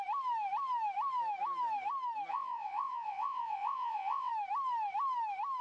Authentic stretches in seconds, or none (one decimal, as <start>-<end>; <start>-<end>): 0.0-2.3; 4.3-5.6